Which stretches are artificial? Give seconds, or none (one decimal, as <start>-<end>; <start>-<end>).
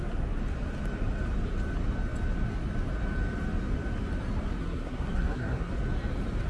4.6-5.7